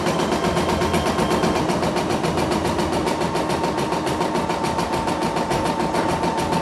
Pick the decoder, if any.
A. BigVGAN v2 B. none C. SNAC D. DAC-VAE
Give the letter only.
B